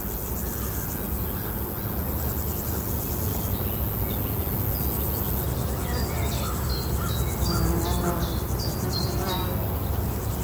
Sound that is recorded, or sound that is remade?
recorded